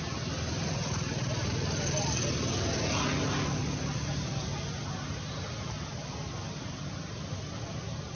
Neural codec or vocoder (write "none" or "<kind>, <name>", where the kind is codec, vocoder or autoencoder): none